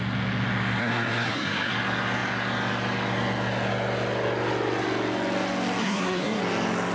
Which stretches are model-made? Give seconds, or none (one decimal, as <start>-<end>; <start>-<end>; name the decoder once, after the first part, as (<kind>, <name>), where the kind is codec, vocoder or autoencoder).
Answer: 0.8-1.7 (codec, SNAC); 5.8-6.4